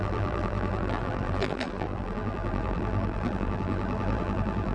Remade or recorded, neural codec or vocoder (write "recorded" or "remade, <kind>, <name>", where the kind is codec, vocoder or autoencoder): remade, vocoder, BigVGAN v2